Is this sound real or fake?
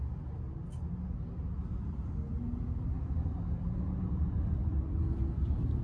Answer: real